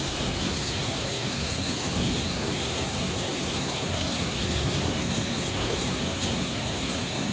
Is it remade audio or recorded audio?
remade